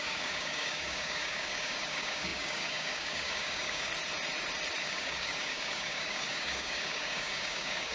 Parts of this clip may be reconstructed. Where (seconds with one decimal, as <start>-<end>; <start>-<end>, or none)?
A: 0.0-3.9; 4.8-7.9